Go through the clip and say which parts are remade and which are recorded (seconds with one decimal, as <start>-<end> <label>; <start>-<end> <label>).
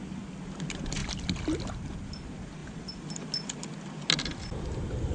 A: 0.0-5.1 recorded